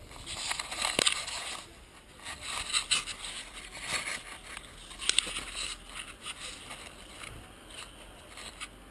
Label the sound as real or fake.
real